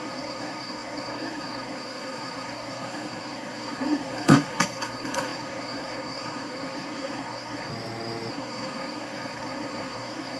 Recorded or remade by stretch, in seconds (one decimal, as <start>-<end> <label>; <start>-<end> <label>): 0.0-7.7 remade; 7.7-8.3 recorded; 8.3-10.4 remade